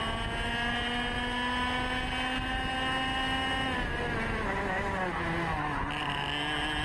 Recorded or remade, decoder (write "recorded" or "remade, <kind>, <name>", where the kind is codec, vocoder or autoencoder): recorded